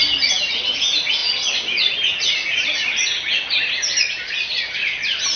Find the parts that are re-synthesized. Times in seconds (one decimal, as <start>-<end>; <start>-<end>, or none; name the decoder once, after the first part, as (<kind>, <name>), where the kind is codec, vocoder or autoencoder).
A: none